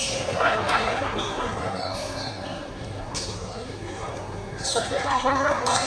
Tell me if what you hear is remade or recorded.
remade